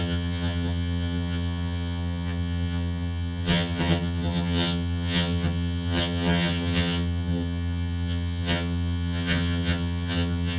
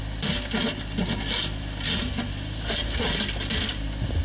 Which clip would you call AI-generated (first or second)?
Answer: first